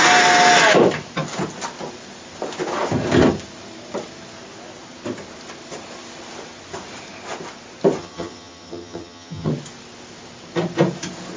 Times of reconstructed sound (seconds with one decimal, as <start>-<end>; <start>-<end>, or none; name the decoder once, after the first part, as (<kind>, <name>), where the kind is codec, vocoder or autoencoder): 8.0-9.5 (vocoder, HiFi-GAN)